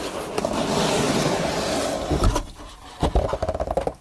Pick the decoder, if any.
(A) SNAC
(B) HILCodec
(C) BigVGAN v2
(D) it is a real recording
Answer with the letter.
D